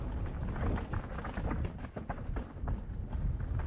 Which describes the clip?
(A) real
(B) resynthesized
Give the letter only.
A